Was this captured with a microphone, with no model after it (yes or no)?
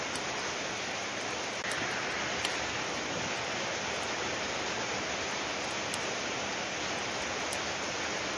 yes